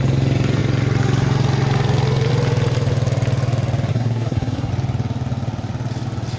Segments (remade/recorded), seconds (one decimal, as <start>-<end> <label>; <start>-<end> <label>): 0.0-3.9 recorded; 3.9-4.7 remade; 4.7-6.4 recorded